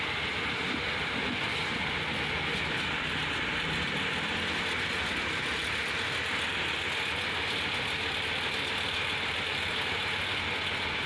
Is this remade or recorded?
recorded